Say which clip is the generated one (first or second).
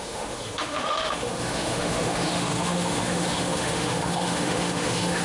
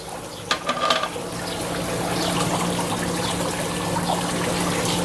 first